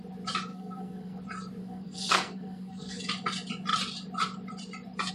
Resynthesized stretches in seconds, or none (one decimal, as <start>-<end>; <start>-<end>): 0.5-1.2; 1.6-3.0